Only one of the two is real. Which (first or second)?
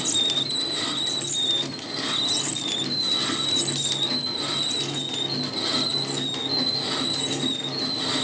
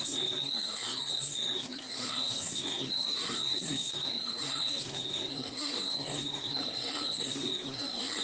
first